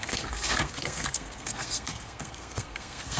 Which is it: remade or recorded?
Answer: remade